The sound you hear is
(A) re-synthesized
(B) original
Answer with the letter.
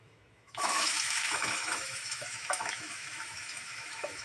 A